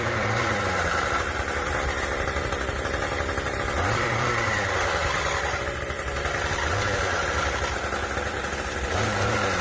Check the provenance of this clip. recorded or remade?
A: remade